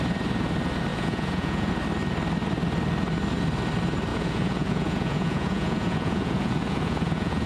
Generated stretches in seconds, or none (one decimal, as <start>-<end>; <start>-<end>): 0.9-1.7; 4.1-7.5

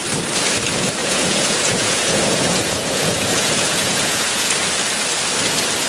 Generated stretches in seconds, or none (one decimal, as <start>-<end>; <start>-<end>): 1.0-4.5

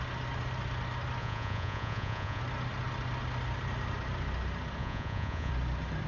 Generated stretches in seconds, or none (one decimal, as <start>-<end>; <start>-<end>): 1.2-2.4; 4.8-5.5